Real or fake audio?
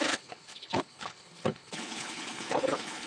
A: fake